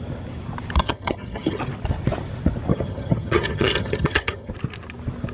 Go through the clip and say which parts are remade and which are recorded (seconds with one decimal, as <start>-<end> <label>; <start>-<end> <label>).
0.0-0.8 recorded; 0.8-1.6 remade; 1.6-2.7 recorded; 2.7-4.5 remade; 4.5-5.3 recorded